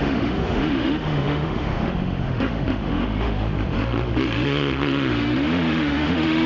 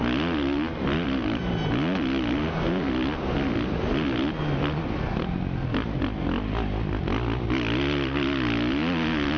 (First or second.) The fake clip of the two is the first